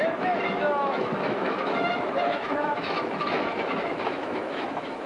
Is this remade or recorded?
remade